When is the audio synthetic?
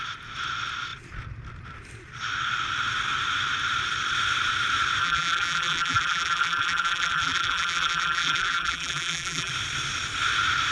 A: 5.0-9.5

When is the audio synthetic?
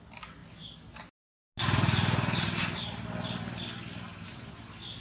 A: none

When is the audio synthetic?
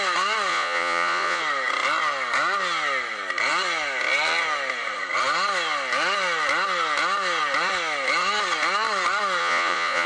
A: 0.5-1.4; 9.4-10.1